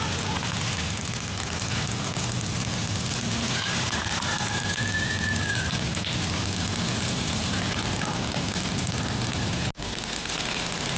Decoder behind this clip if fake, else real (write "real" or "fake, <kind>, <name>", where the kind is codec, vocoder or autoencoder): real